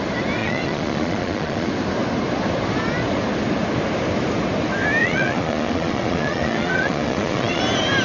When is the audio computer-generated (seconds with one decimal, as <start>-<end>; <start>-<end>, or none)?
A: 0.4-1.7; 5.0-7.6